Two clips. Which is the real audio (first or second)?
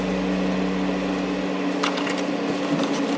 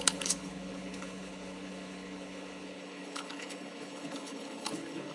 first